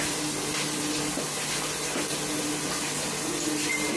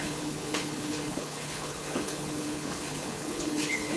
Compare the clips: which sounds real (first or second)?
first